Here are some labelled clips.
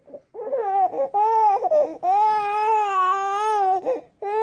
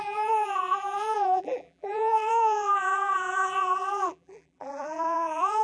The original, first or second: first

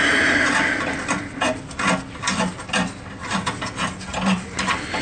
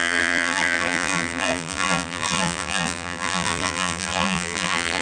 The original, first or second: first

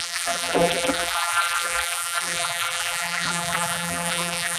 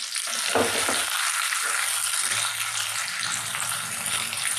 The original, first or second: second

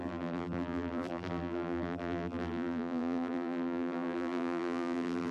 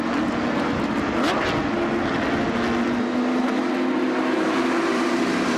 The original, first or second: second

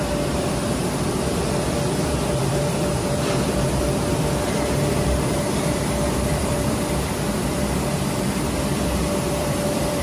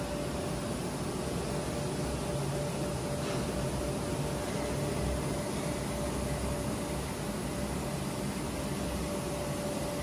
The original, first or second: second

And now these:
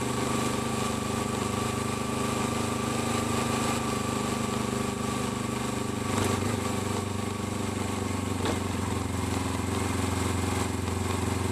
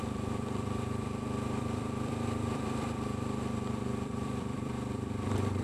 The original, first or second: first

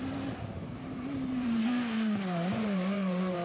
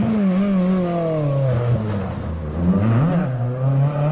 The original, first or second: second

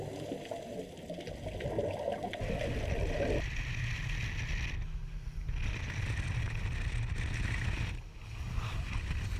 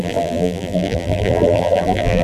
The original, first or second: first